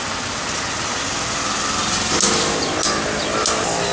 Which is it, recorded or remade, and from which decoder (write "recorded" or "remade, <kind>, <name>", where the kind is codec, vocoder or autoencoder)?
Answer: recorded